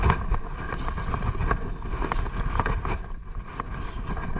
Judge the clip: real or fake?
real